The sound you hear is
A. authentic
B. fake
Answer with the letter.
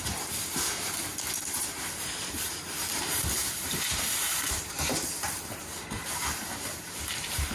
B